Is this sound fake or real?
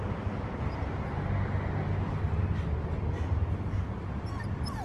real